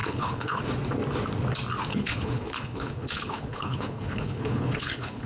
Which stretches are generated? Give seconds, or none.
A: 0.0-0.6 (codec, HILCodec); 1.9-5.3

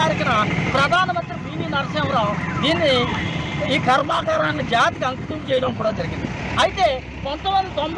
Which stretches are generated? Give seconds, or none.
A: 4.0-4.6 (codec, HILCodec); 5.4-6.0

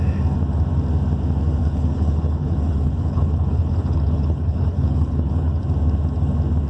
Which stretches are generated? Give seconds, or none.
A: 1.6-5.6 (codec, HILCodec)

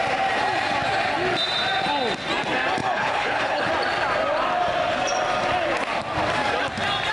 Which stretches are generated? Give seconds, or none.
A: 2.8-3.7 (codec, HILCodec)

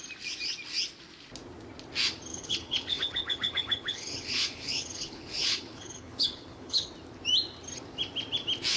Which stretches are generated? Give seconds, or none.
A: 2.3-6.9 (codec, HILCodec)